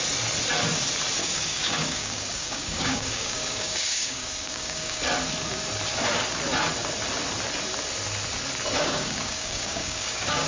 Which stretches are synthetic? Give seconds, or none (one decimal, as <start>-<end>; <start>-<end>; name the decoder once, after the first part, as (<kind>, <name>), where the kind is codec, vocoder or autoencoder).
1.2-5.0 (codec, DAC); 8.8-10.5